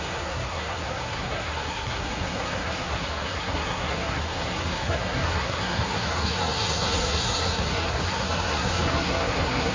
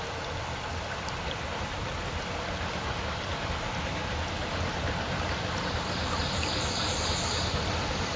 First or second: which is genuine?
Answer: second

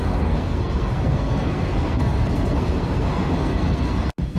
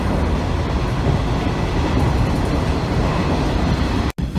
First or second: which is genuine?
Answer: second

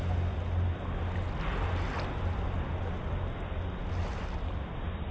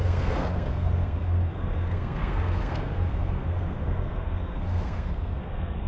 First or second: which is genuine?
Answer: first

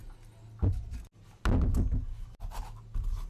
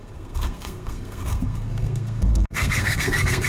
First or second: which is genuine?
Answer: first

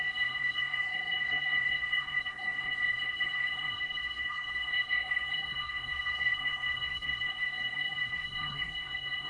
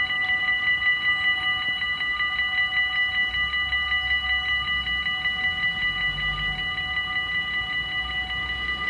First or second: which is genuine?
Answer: second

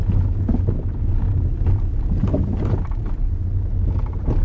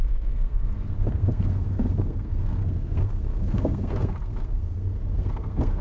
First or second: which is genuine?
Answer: first